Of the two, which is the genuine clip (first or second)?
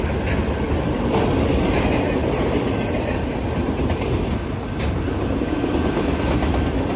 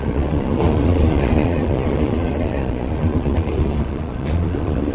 first